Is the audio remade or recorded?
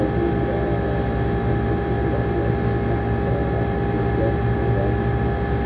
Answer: recorded